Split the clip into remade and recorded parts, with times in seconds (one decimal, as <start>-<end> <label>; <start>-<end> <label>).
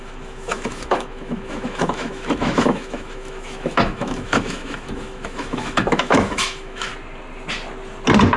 0.0-6.9 remade; 6.9-8.4 recorded